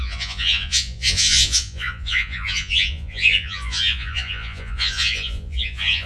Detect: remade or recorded remade